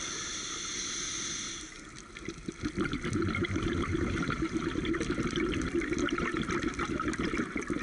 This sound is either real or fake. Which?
real